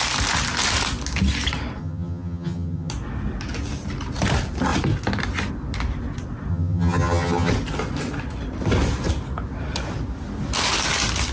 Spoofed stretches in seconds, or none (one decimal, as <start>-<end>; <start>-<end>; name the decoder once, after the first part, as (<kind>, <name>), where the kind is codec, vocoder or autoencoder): 1.8-2.9 (vocoder, HiFi-GAN); 6.5-7.5